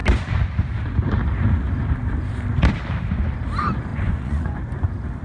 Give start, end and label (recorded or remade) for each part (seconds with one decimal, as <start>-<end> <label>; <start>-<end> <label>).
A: 0.0-3.9 recorded; 3.9-4.6 remade; 4.6-5.2 recorded